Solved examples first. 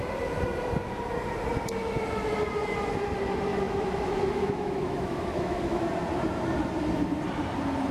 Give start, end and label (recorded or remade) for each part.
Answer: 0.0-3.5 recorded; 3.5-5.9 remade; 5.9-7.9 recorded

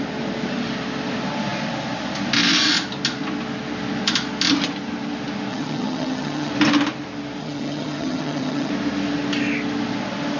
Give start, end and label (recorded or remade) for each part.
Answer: 0.0-5.5 recorded; 5.5-6.5 remade; 6.5-7.4 recorded; 7.4-8.7 remade; 8.7-10.4 recorded